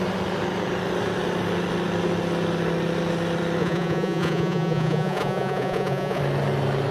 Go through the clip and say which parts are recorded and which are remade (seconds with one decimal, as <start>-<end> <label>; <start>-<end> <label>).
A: 0.0-3.6 recorded; 3.6-6.2 remade; 6.2-6.9 recorded